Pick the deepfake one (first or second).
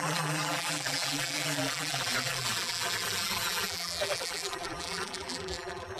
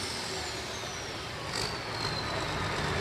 first